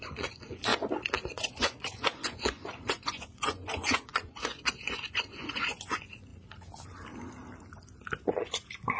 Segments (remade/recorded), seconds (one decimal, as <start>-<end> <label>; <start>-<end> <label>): 0.0-0.7 remade; 0.7-1.3 recorded; 1.3-6.3 remade; 6.3-8.4 recorded; 8.4-9.0 remade